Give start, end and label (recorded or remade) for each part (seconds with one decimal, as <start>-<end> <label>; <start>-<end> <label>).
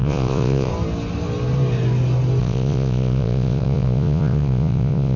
0.0-0.7 remade; 0.7-2.4 recorded; 2.4-5.2 remade